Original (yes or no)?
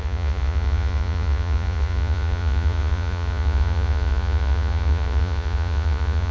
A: no